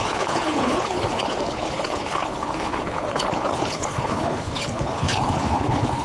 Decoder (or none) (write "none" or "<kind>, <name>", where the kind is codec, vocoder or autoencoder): codec, HILCodec